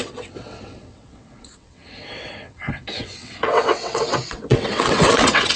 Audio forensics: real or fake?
fake